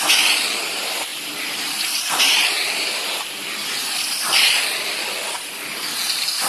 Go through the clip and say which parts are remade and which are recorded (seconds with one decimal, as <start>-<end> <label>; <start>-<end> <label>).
0.0-1.1 recorded; 1.1-3.5 remade; 3.5-6.5 recorded